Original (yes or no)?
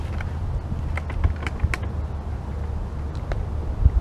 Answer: yes